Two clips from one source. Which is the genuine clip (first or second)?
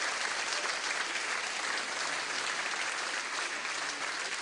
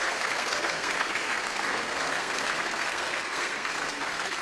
first